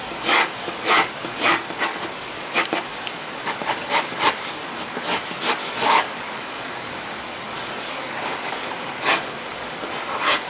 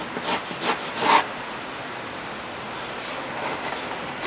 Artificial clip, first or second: first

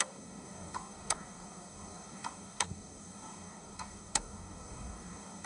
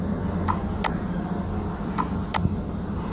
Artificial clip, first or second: first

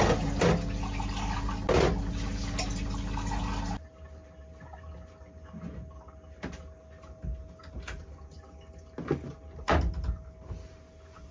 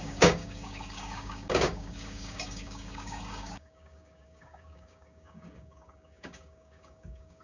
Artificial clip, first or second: second